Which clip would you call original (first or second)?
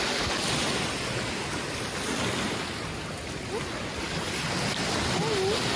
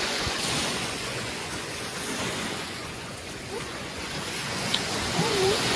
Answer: first